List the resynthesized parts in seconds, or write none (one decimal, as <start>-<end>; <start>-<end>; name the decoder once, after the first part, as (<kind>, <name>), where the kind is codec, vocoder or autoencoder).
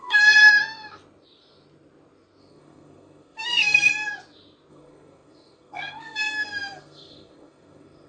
0.0-0.5 (codec, SNAC); 2.4-3.9; 4.7-8.1